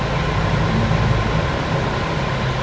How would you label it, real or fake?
real